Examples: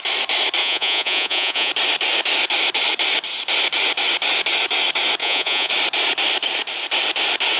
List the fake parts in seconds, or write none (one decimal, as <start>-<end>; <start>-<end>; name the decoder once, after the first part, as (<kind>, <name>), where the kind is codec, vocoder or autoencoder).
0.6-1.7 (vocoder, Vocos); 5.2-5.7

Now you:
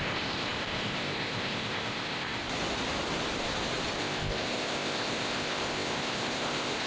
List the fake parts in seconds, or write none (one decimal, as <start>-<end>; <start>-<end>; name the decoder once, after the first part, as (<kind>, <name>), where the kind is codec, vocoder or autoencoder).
0.0-2.4 (codec, ZipCodec); 4.0-6.9

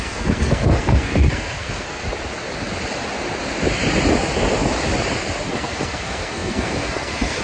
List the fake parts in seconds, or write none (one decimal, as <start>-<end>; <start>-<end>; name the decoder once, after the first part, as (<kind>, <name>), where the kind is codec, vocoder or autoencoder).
0.0-2.0 (codec, SNAC); 5.5-7.4

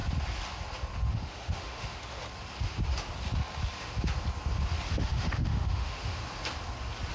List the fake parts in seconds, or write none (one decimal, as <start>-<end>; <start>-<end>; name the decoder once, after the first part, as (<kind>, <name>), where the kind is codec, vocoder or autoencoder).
1.1-2.2 (autoencoder, DAC-VAE); 4.9-6.2

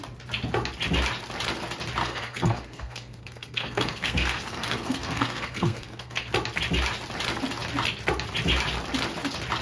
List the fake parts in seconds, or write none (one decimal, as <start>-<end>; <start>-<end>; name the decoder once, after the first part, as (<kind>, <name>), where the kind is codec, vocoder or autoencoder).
2.0-6.3 (codec, SNAC)

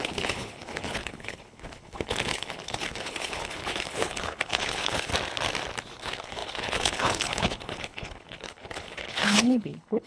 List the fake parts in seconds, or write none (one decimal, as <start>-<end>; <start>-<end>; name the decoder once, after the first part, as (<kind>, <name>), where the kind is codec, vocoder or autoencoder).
0.0-5.1 (codec, HILCodec); 6.0-10.1